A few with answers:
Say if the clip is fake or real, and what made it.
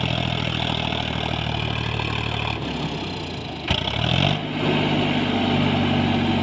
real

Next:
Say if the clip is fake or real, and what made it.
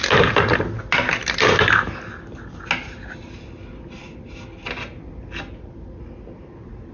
real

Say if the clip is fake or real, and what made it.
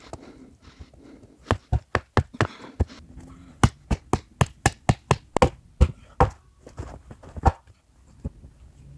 real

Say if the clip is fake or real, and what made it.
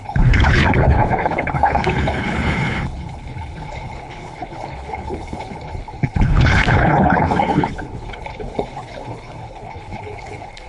fake, codec, HILCodec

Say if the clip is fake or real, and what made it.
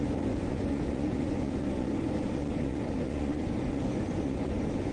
fake, vocoder, Vocos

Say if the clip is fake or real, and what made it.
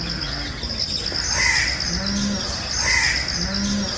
real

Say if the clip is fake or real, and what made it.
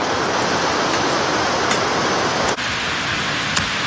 real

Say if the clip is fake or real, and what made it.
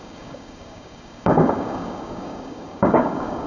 fake, codec, DAC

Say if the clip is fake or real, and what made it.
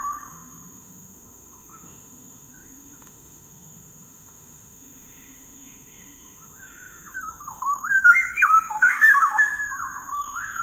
fake, autoencoder, DAC-VAE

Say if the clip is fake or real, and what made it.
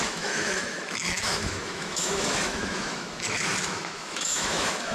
fake, autoencoder, DAC-VAE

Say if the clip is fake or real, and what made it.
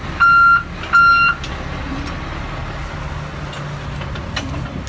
real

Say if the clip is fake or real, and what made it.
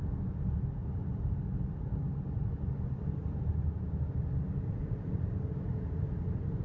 real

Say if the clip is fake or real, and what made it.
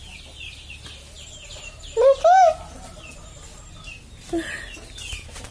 real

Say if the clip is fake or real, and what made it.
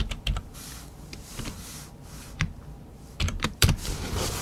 fake, vocoder, BigVGAN v2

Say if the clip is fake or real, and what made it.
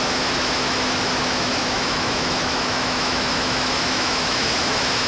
fake, autoencoder, DAC-VAE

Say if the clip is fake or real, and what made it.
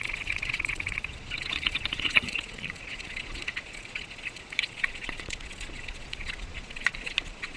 fake, vocoder, Vocos